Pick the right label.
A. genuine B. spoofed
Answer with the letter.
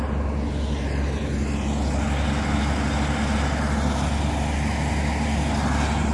A